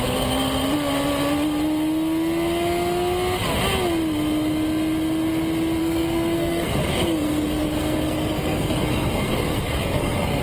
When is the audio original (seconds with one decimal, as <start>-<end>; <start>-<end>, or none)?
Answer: 0.0-5.8